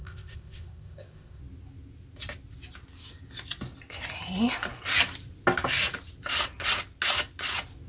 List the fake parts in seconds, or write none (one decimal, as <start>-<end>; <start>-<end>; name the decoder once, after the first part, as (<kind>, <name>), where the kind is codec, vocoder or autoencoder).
0.0-1.4 (codec, ZipCodec)